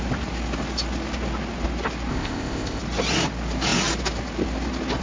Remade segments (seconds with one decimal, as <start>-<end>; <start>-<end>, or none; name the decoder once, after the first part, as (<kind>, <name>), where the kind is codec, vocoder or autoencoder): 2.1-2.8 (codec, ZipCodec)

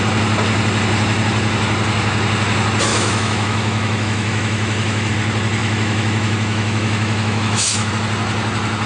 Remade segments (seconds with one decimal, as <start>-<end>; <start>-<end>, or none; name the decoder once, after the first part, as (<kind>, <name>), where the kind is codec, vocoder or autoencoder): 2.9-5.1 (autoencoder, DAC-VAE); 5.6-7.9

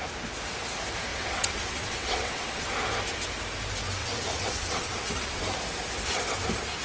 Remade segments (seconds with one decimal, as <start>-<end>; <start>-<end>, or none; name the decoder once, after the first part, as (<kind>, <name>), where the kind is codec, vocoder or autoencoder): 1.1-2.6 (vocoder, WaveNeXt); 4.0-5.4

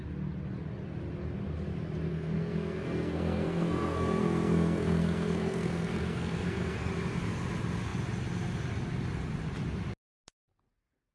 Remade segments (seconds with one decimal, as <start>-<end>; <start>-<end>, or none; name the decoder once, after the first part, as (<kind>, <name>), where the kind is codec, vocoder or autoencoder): 2.1-6.9 (codec, SNAC)

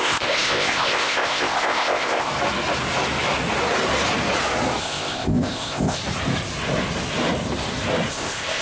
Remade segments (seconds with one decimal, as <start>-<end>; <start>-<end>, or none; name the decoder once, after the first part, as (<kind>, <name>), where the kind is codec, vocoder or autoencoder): 0.0-2.3 (codec, ZipCodec); 4.8-6.0; 8.1-8.6

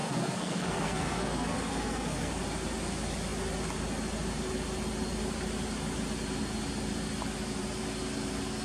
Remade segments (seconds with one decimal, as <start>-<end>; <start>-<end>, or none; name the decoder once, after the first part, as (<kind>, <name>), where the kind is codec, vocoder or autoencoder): 0.0-2.3 (codec, SNAC)

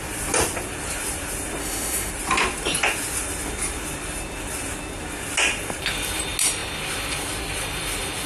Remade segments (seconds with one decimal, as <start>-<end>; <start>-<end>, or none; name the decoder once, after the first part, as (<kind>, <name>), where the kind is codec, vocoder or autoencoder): 1.6-2.1 (autoencoder, DAC-VAE)

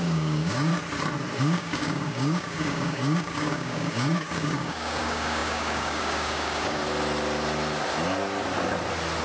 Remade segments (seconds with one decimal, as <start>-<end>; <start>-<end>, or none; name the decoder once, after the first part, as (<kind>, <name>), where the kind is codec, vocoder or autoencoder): 0.0-0.7 (codec, DAC); 1.4-6.8